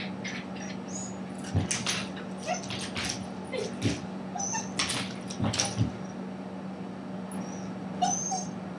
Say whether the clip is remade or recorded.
recorded